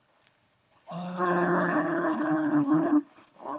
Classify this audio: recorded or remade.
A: remade